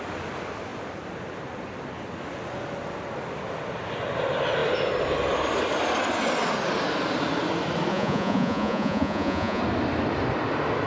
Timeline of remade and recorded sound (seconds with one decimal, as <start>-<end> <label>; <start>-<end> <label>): 0.0-7.9 recorded; 7.9-9.6 remade; 9.6-10.9 recorded